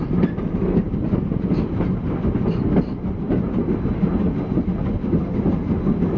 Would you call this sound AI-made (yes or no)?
no